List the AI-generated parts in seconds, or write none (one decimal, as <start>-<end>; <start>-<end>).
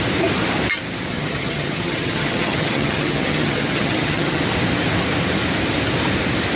1.1-4.4